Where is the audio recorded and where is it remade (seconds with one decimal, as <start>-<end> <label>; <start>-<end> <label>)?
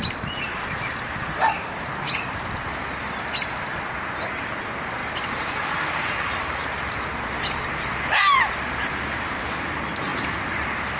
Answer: 0.0-5.0 recorded; 5.0-9.7 remade; 9.7-10.1 recorded; 10.1-11.0 remade